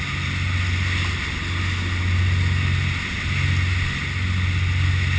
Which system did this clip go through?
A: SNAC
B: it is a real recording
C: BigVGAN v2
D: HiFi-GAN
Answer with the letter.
B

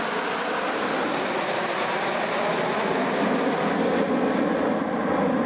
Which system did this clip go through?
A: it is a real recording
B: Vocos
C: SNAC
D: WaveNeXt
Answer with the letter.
A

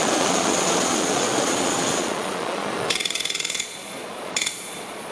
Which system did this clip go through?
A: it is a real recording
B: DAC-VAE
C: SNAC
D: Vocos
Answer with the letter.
D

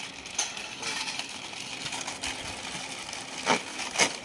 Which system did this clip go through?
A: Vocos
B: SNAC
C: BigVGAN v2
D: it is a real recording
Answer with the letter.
D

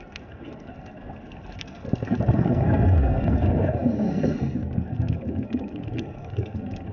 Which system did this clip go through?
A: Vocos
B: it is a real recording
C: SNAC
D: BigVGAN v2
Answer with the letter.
C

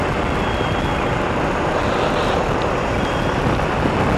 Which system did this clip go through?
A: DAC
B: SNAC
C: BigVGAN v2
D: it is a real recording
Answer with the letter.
D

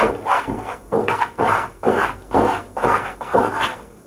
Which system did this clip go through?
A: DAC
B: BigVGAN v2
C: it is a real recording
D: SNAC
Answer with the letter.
D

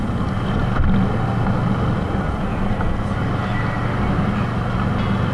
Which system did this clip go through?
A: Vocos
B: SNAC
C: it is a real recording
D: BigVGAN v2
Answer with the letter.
C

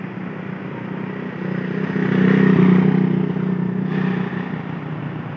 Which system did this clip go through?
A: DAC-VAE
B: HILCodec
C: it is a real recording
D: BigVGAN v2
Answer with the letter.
C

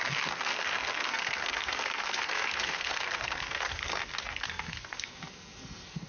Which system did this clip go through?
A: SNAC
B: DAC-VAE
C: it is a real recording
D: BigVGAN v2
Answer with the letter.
A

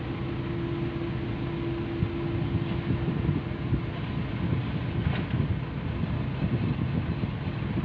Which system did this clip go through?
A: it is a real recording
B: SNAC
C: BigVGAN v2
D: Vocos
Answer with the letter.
A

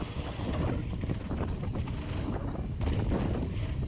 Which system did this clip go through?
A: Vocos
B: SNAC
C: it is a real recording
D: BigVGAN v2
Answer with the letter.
C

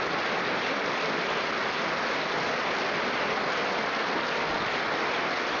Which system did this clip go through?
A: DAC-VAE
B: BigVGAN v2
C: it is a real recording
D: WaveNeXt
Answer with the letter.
C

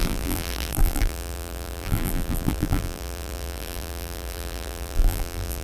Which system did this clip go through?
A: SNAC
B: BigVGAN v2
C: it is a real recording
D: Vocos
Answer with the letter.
B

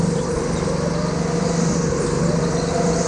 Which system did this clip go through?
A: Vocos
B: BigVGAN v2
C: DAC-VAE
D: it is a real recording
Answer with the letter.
D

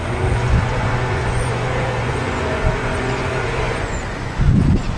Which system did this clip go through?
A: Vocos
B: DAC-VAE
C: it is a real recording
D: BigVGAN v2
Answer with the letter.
A